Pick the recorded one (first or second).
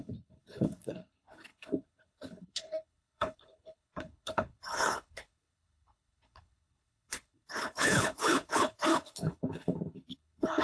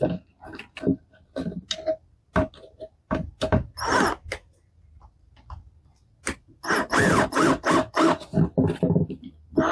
second